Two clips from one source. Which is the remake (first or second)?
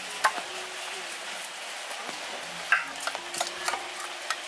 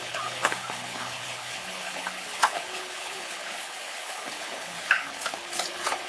second